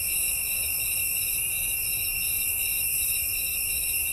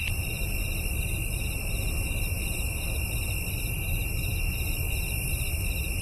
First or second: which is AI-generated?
first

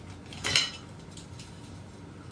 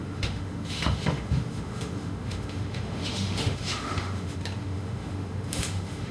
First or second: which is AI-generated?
second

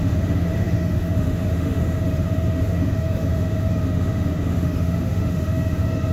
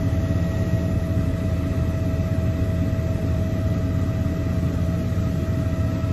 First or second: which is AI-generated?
first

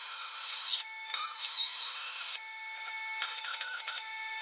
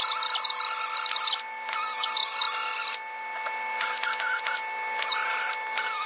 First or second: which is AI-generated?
first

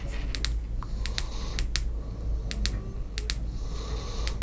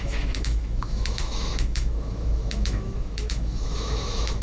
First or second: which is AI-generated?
second